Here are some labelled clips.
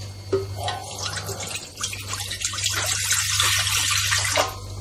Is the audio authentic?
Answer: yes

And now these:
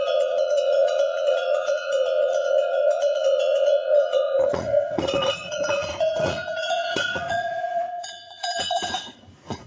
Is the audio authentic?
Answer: no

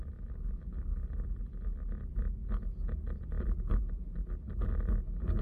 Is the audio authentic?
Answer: yes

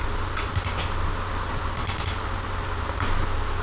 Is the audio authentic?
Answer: yes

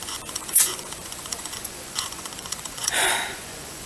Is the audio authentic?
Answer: no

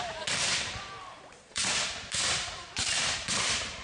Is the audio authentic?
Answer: no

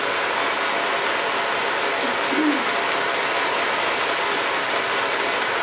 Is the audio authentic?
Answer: yes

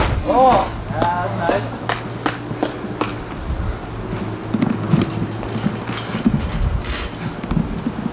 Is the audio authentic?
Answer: yes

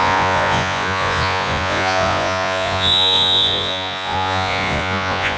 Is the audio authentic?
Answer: no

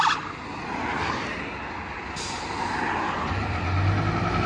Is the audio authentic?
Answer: yes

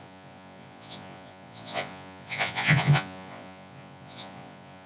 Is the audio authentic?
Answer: no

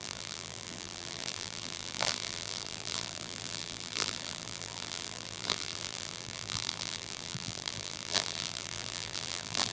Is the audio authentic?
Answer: no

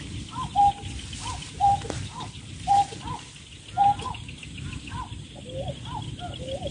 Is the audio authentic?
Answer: yes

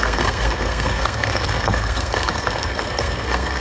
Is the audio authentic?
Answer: no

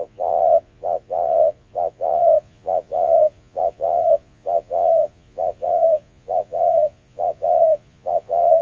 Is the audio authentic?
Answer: no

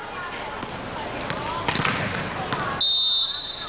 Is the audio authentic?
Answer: yes